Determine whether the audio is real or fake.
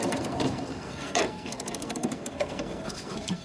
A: fake